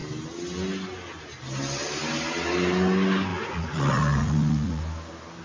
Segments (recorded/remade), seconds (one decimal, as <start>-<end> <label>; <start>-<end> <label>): 0.0-3.3 recorded; 3.3-4.8 remade; 4.8-5.4 recorded